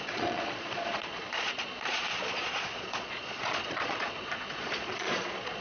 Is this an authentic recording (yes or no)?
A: no